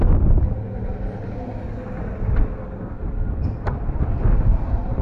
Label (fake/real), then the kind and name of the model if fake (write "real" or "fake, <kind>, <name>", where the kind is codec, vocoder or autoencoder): real